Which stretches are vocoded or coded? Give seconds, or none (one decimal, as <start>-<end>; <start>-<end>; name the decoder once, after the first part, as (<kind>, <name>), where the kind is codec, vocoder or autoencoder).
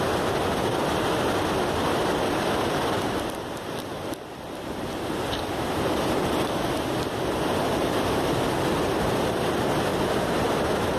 0.0-11.0 (vocoder, BigVGAN v2)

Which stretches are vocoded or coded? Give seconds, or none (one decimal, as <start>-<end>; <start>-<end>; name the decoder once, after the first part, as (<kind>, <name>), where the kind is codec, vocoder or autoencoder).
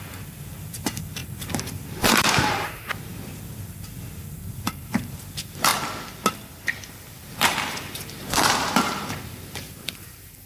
0.0-5.7 (vocoder, BigVGAN v2); 6.9-10.5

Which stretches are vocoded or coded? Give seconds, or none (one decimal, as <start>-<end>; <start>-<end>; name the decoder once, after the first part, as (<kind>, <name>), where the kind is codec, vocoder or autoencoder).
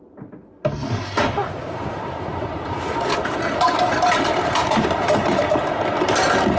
1.4-5.4 (vocoder, BigVGAN v2)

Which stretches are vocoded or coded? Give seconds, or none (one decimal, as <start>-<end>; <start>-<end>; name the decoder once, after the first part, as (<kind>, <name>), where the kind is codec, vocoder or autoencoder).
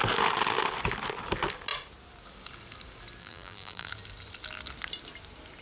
3.2-3.9 (vocoder, BigVGAN v2)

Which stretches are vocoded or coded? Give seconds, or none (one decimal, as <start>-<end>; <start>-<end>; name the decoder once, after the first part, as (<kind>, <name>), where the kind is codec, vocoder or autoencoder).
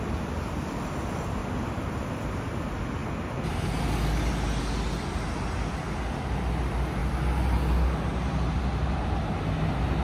1.4-2.3 (vocoder, BigVGAN v2)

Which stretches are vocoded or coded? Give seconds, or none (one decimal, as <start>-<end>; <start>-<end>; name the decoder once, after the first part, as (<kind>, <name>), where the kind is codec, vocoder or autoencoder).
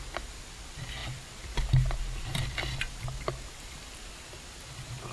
1.0-4.1 (vocoder, BigVGAN v2)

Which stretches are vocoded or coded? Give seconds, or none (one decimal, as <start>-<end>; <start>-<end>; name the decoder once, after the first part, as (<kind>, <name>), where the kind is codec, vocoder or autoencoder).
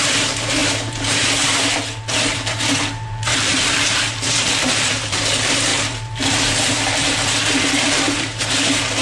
0.0-9.0 (vocoder, BigVGAN v2)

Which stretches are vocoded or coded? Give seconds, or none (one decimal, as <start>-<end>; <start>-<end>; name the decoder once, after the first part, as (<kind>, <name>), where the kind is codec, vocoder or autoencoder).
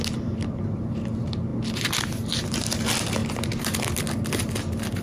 3.2-3.8 (vocoder, BigVGAN v2)